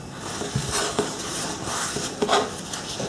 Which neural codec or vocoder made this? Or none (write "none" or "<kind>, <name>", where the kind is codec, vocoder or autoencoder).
none